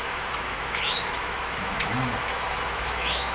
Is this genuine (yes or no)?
no